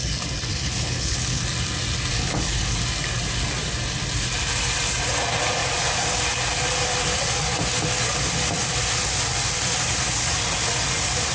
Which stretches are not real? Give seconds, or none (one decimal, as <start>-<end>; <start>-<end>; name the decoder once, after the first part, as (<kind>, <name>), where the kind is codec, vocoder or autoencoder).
0.5-1.4 (codec, HILCodec); 2.1-2.8